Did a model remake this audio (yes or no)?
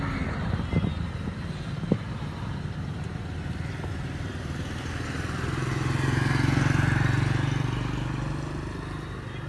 no